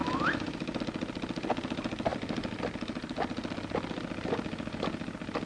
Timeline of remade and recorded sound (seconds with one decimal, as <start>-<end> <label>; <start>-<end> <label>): 0.0-0.8 remade; 0.8-5.5 recorded